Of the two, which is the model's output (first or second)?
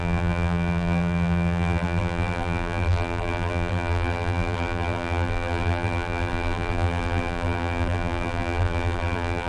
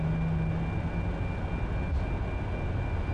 first